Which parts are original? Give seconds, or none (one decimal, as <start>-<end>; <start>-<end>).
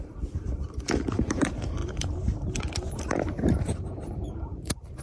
none